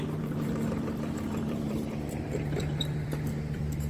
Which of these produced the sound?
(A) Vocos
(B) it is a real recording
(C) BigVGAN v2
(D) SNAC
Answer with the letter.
C